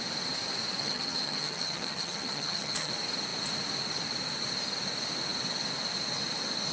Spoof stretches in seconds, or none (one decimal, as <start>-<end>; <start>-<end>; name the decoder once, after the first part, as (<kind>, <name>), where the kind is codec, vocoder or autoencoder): 0.8-2.9 (vocoder, HiFi-GAN)